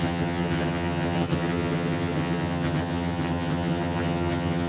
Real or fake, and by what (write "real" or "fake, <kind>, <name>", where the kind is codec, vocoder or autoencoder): fake, vocoder, HiFi-GAN